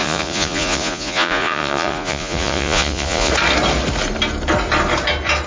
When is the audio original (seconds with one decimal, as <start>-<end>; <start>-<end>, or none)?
3.3-5.5